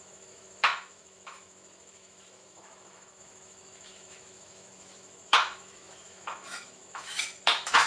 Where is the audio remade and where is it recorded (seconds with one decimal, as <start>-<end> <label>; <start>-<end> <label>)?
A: 0.0-7.9 remade